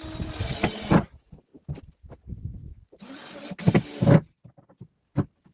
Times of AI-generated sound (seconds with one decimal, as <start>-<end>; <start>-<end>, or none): 1.5-2.1; 2.6-3.3